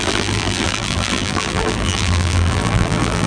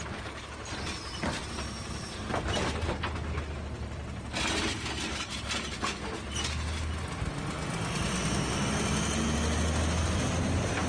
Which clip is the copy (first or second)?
first